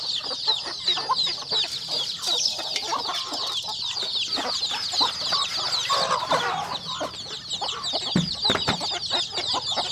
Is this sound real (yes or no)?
yes